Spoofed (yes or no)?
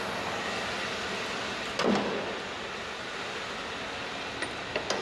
no